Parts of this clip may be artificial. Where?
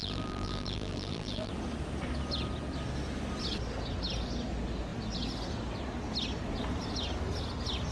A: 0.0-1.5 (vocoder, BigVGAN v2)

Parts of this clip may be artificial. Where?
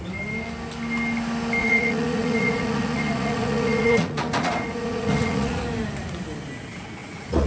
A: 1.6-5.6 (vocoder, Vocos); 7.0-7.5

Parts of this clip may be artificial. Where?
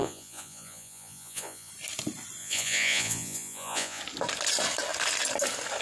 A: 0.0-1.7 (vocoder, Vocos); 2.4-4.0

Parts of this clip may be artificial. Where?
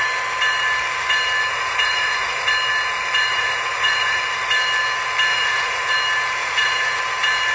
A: 1.5-2.5 (vocoder, Vocos); 3.3-4.2; 5.3-5.9; 6.4-7.0